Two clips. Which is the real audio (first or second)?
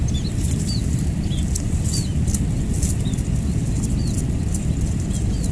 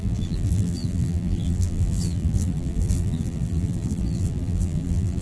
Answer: first